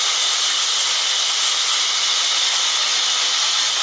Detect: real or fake real